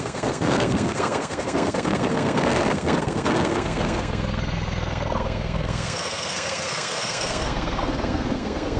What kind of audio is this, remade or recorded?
remade